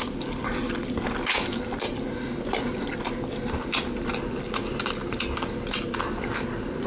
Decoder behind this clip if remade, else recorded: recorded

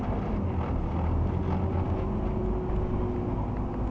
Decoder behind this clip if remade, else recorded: recorded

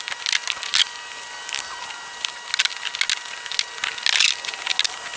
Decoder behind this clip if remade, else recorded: recorded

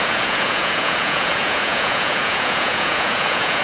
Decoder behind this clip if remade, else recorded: remade, vocoder, Vocos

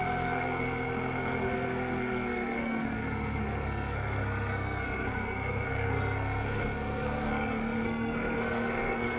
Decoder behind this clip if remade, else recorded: remade, codec, SNAC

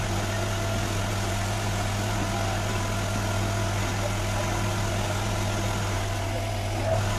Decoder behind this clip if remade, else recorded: recorded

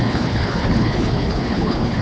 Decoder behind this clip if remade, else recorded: remade, codec, HILCodec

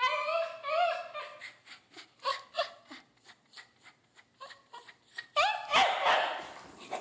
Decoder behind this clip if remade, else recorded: recorded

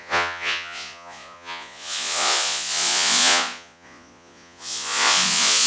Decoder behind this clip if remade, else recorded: remade, vocoder, Vocos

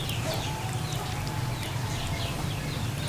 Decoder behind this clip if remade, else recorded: recorded